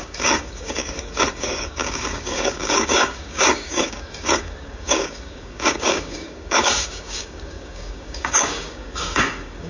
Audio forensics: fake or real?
fake